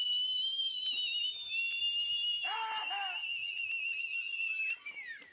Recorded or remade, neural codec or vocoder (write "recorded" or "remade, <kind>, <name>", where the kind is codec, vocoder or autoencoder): recorded